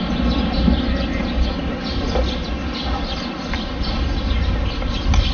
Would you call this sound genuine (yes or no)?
yes